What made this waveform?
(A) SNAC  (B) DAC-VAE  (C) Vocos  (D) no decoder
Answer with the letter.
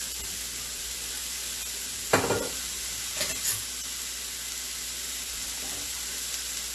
D